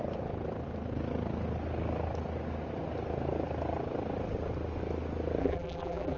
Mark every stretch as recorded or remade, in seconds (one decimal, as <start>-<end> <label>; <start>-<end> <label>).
0.0-5.4 recorded; 5.4-6.2 remade